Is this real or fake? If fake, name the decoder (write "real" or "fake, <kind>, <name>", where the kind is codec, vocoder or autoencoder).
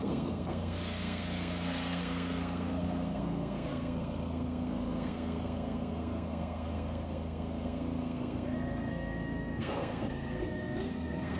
fake, codec, SNAC